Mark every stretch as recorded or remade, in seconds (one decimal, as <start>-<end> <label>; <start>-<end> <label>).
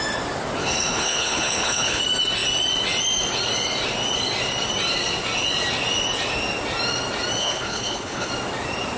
0.0-0.6 recorded; 0.6-2.0 remade; 2.0-7.4 recorded; 7.4-8.3 remade; 8.3-9.0 recorded